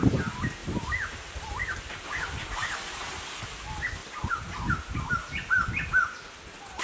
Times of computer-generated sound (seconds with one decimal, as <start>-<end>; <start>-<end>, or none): none